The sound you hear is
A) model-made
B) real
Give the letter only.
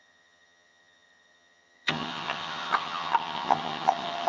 A